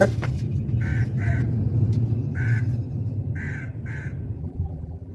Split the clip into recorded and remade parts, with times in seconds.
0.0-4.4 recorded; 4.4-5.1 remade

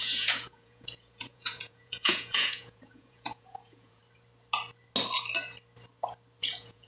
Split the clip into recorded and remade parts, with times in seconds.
0.0-4.0 remade; 4.0-6.4 recorded; 6.4-6.9 remade

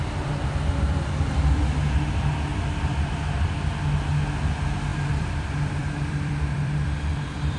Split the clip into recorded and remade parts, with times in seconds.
0.0-2.5 recorded; 2.5-3.1 remade; 3.1-4.9 recorded; 4.9-7.6 remade

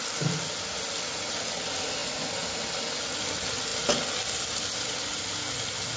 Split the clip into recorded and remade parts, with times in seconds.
0.0-6.0 recorded

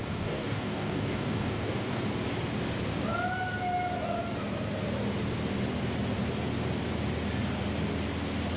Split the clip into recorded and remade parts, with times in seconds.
0.0-2.0 remade; 2.0-8.6 recorded

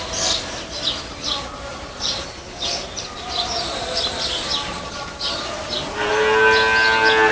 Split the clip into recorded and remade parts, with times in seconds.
0.0-1.7 recorded; 1.7-6.1 remade; 6.1-7.3 recorded

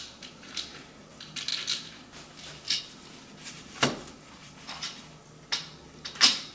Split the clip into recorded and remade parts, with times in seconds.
0.0-4.4 recorded; 4.4-5.0 remade; 5.0-6.5 recorded